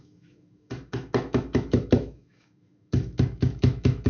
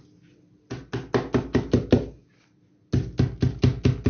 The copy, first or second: first